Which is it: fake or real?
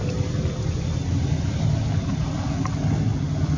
real